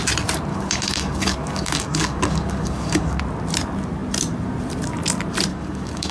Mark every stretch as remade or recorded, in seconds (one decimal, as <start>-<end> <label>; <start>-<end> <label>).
0.0-0.5 recorded; 0.5-3.2 remade; 3.2-5.5 recorded; 5.5-6.1 remade